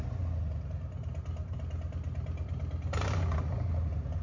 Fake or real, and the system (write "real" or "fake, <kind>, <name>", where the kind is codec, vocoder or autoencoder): real